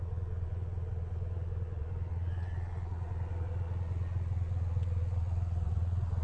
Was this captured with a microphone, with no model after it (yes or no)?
no